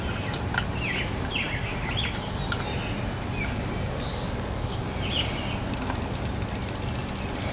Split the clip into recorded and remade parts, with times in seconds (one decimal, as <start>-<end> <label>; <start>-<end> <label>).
0.0-4.1 recorded; 4.1-4.8 remade; 4.8-7.5 recorded